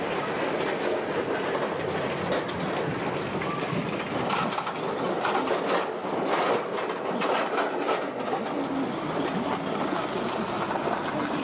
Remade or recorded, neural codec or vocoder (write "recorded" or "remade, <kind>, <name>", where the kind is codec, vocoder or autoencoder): recorded